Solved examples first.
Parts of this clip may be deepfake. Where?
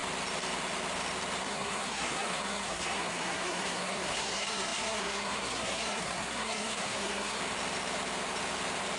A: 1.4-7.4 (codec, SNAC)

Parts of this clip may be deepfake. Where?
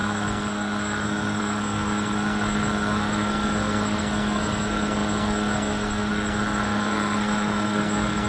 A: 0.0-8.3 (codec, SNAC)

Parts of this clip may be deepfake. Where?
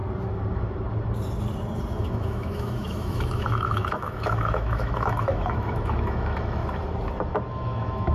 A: 2.0-6.6 (autoencoder, DAC-VAE); 7.5-8.1